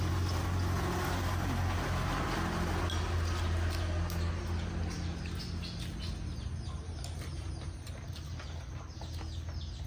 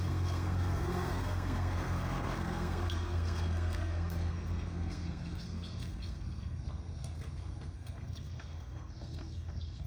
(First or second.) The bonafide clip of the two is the first